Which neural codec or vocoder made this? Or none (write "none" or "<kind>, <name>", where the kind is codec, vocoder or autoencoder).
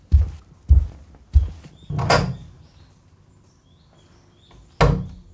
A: none